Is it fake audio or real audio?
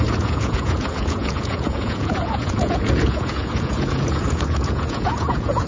fake